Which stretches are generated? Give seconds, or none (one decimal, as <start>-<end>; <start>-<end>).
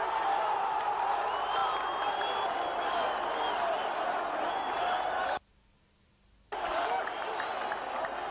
none